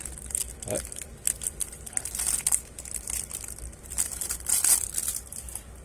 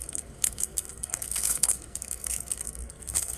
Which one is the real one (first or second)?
first